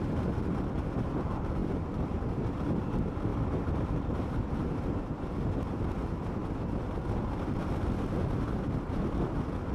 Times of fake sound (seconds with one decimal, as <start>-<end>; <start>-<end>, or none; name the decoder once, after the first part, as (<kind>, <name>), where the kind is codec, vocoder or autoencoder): none